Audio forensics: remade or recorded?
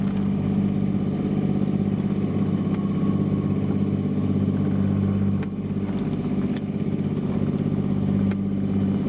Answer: recorded